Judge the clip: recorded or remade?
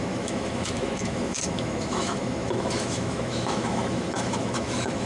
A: remade